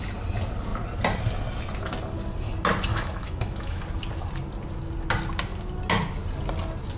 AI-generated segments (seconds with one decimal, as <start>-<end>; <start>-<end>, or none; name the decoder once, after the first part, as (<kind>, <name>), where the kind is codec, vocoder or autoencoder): 2.9-3.8 (autoencoder, DAC-VAE)